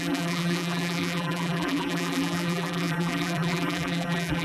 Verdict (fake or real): fake